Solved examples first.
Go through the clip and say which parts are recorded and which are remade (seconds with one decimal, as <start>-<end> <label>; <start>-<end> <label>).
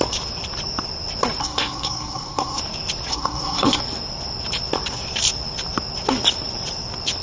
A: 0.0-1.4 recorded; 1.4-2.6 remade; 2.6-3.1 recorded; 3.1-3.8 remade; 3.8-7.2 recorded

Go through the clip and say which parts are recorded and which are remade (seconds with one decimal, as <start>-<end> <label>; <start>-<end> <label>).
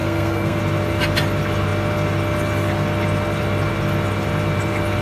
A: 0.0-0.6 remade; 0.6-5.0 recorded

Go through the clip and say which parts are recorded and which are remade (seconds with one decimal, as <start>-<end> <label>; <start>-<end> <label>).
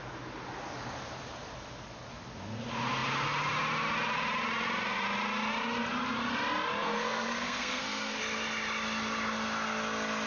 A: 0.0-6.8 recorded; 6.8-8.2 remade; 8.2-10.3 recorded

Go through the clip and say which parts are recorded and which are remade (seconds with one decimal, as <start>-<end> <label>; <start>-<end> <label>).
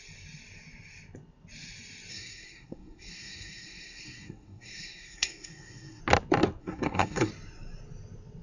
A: 0.0-2.1 recorded; 2.1-6.0 remade; 6.0-6.6 recorded; 6.6-7.3 remade; 7.3-8.4 recorded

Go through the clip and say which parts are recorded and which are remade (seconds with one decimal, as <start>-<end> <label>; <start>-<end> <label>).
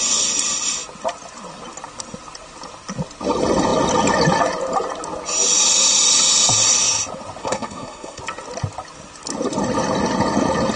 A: 0.0-7.4 recorded; 7.4-8.2 remade; 8.2-10.8 recorded